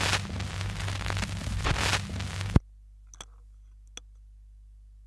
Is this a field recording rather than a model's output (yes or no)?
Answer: yes